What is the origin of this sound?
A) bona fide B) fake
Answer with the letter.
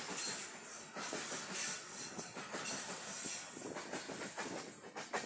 A